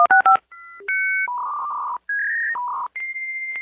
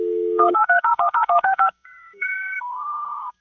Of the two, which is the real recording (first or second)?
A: first